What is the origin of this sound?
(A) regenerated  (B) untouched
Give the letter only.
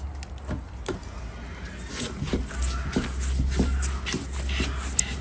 B